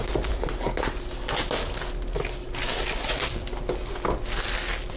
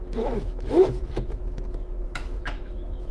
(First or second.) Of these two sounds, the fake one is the second